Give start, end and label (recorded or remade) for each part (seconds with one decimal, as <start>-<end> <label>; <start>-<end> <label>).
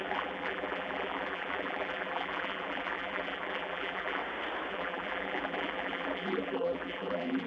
0.0-4.2 remade; 4.2-4.7 recorded; 4.7-7.5 remade